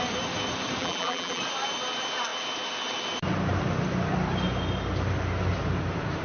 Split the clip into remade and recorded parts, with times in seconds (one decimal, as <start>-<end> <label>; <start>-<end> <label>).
0.0-0.8 recorded; 0.8-1.4 remade; 1.4-6.2 recorded